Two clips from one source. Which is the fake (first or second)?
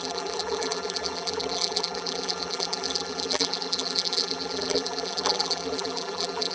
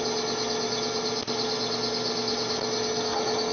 first